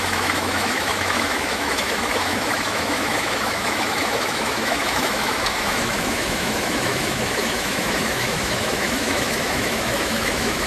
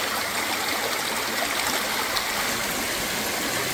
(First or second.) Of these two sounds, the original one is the second